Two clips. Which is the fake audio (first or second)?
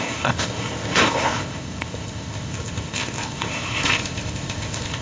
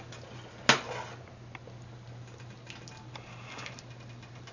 first